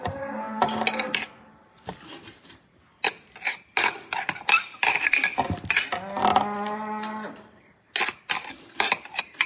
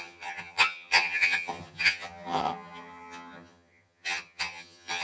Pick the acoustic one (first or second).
first